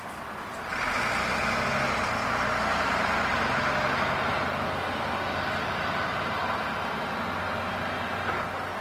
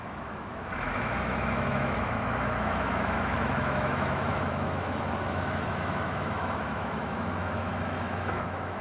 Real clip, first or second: first